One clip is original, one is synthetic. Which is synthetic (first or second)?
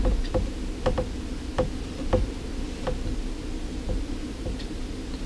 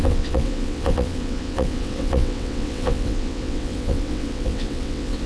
second